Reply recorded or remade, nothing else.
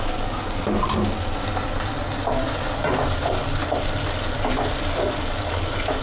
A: recorded